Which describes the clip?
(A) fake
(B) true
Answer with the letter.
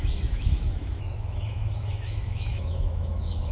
A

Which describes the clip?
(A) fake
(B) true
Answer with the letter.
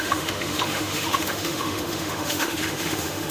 A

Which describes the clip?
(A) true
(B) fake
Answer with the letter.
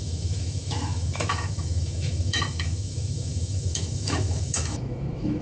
B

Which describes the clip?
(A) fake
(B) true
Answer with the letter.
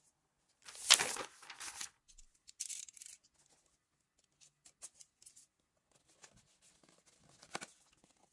B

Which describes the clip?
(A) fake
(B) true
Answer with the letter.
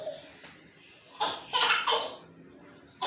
B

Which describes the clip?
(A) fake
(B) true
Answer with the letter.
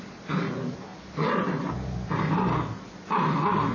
B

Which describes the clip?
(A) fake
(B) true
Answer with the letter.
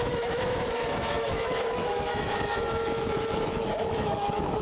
A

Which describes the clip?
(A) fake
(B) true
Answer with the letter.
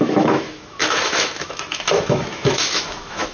A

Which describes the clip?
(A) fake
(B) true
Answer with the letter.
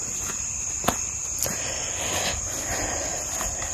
B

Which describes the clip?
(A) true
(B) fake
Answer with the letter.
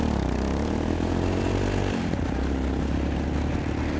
A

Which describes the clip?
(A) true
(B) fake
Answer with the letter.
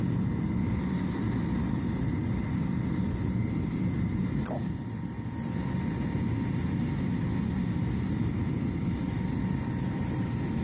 A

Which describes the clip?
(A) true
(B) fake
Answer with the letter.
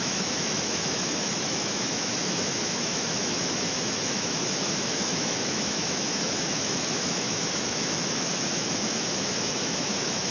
B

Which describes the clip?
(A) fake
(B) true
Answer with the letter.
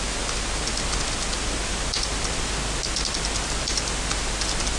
B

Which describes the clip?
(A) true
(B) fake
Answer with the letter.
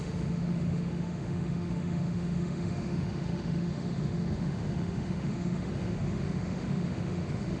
B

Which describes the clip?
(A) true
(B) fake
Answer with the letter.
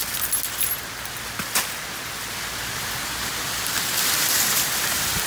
A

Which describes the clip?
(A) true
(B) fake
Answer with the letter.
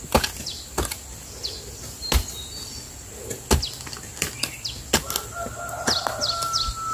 A